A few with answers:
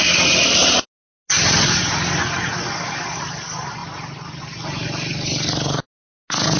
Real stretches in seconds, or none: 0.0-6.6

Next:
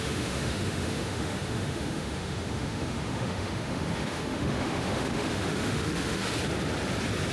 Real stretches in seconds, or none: 6.2-7.3

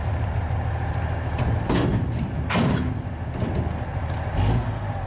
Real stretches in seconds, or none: 0.0-5.1